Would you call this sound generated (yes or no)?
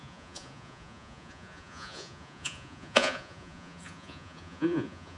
yes